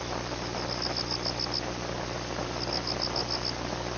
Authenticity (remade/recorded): recorded